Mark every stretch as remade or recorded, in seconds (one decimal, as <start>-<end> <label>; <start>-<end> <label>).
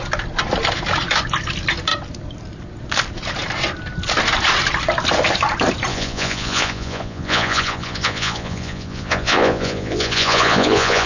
0.0-5.9 recorded; 5.9-11.1 remade